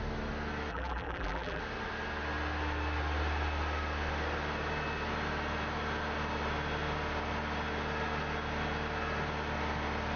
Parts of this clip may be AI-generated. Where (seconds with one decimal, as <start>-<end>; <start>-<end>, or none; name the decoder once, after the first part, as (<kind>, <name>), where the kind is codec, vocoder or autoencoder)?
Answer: 0.7-1.6 (vocoder, BigVGAN v2)